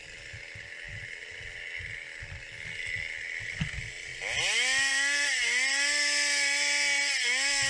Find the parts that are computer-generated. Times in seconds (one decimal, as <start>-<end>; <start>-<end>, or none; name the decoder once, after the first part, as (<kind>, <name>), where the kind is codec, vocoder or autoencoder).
none